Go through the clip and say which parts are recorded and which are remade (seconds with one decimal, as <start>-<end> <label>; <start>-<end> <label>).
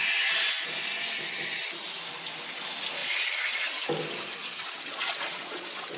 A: 0.0-3.0 recorded; 3.0-3.6 remade; 3.6-4.4 recorded; 4.4-6.0 remade